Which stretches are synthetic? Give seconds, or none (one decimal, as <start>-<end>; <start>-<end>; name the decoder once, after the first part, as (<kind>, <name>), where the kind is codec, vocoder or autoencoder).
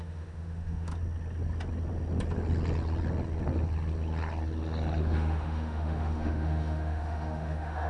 0.0-0.9 (autoencoder, DAC-VAE); 5.0-7.9